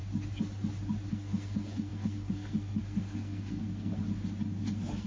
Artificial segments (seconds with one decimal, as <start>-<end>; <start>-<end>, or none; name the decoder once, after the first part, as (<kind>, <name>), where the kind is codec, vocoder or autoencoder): 1.1-4.0 (codec, SNAC); 4.6-5.1